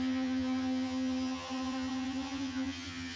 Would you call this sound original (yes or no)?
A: no